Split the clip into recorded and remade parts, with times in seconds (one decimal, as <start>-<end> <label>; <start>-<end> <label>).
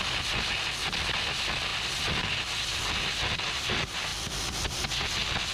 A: 0.0-5.5 recorded